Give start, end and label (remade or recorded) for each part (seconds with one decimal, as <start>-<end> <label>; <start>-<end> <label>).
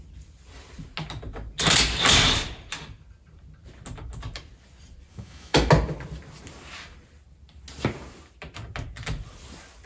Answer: 0.0-5.1 recorded; 5.1-5.7 remade; 5.7-9.9 recorded